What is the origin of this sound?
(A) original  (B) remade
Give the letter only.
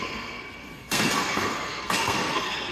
B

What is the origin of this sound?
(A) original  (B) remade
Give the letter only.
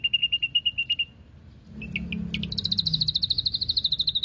A